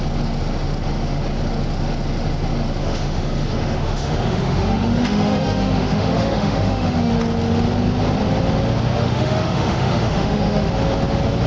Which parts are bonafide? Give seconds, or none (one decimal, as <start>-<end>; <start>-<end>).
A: 0.0-2.8; 7.1-9.0; 10.7-11.5